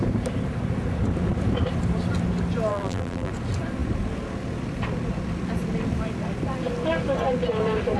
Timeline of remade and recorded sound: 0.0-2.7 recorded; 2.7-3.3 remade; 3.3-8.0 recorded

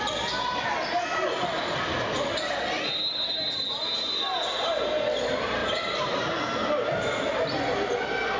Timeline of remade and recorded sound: 0.0-5.6 recorded; 5.6-6.4 remade; 6.4-8.4 recorded

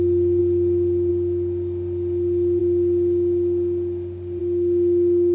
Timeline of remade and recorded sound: 0.0-5.3 recorded

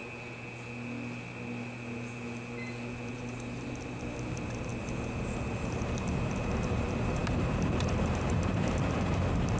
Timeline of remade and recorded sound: 0.0-3.1 recorded; 3.1-4.7 remade; 4.7-5.6 recorded; 5.6-9.6 remade

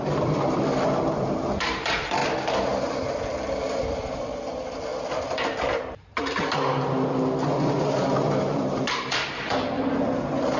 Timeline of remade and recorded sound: 0.0-2.2 remade; 2.2-3.8 recorded; 3.8-4.9 remade; 4.9-7.7 recorded; 7.7-10.6 remade

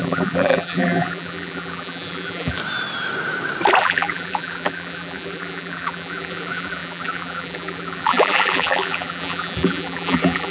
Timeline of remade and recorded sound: 0.0-2.6 remade; 2.6-3.8 recorded; 3.8-10.5 remade

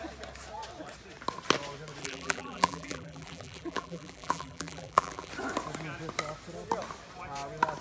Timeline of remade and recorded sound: 0.0-2.0 recorded; 2.0-5.3 remade; 5.3-7.8 recorded

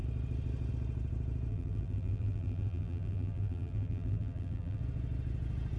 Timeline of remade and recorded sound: 0.0-1.5 recorded; 1.5-4.8 remade; 4.8-5.8 recorded